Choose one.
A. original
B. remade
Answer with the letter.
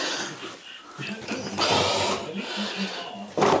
A